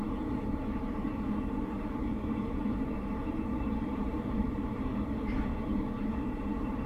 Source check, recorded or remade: remade